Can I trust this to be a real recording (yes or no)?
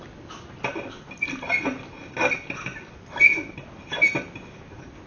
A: yes